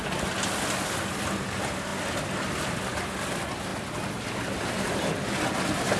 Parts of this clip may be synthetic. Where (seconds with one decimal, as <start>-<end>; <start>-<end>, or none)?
none